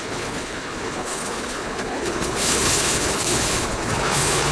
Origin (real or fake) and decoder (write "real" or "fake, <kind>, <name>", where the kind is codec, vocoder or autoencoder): fake, codec, HILCodec